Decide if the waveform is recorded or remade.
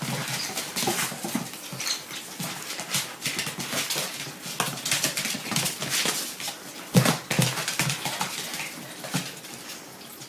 recorded